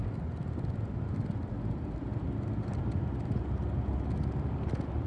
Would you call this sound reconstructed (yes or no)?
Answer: no